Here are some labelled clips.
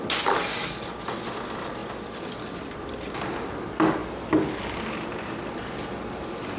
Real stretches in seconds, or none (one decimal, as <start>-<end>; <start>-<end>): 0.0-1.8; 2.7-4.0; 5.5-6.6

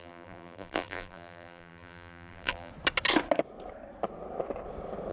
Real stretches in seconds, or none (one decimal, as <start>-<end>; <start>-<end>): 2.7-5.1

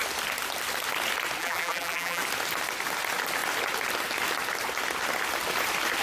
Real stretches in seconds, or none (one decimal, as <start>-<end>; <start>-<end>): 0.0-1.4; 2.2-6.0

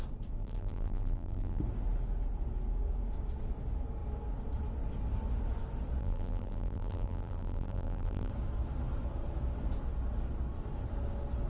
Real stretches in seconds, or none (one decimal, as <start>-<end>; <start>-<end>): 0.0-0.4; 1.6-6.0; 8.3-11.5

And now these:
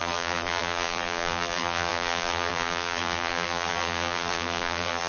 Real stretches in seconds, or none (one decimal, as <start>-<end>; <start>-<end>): none